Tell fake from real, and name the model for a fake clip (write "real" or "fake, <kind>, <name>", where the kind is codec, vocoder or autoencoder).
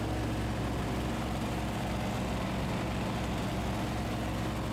real